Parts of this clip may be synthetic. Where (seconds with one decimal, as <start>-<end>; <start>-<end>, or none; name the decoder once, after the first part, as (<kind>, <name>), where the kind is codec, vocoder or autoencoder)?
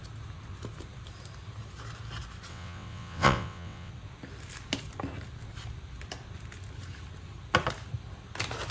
2.5-3.9 (vocoder, WaveNeXt)